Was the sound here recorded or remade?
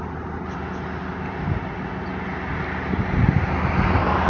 recorded